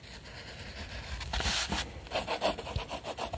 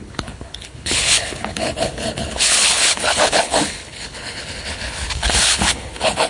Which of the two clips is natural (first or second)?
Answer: first